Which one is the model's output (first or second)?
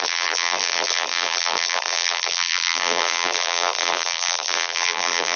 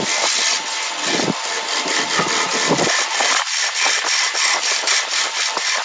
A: first